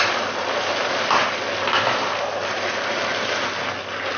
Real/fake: real